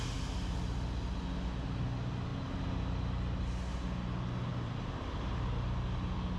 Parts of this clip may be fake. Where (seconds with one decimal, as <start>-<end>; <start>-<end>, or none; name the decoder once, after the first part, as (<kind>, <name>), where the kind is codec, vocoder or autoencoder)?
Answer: 4.5-5.1 (vocoder, BigVGAN v2)